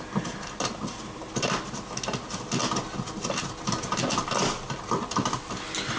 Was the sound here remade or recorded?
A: recorded